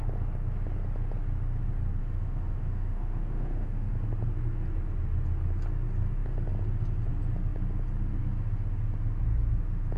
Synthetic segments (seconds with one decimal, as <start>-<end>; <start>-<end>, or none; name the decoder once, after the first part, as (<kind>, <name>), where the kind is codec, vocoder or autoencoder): 2.0-3.9 (autoencoder, DAC-VAE)